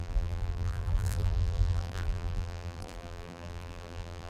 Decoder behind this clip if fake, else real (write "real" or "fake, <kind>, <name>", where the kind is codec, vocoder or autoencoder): fake, vocoder, BigVGAN v2